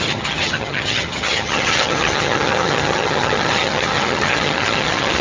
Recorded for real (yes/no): no